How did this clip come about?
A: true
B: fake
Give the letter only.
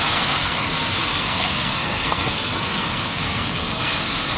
B